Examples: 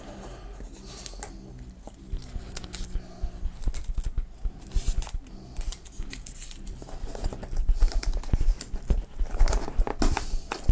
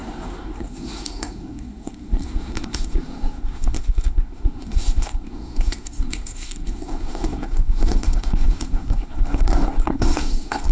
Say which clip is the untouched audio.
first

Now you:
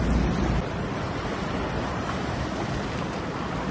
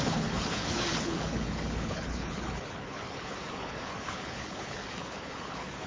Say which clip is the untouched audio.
first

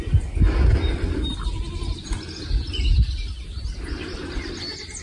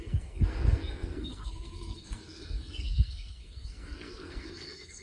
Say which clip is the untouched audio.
first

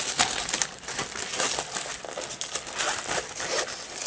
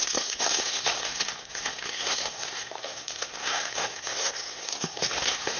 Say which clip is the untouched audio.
first